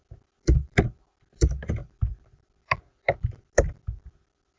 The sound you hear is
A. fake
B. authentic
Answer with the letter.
B